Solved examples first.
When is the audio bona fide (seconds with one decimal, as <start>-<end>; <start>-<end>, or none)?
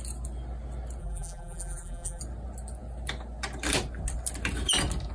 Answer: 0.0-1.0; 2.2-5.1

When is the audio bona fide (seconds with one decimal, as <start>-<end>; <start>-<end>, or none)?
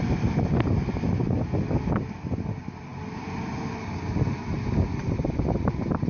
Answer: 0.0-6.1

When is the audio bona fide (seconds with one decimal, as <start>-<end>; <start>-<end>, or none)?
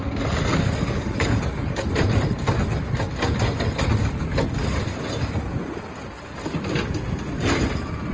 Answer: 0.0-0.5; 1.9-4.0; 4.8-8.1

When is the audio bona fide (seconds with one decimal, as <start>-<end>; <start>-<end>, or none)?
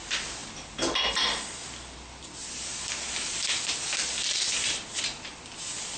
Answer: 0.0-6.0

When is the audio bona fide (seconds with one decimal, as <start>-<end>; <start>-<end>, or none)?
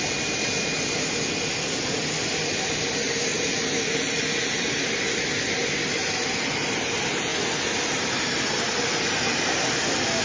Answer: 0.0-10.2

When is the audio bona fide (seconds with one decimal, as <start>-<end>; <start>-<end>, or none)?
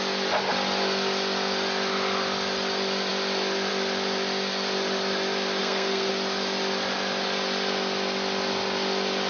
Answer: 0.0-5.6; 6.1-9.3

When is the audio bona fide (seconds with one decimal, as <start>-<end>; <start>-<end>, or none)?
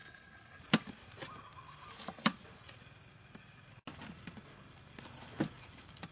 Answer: 0.6-6.1